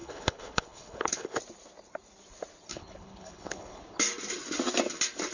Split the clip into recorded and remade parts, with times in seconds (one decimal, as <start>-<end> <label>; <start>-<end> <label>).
0.0-1.4 remade; 1.4-2.7 recorded; 2.7-4.0 remade; 4.0-5.3 recorded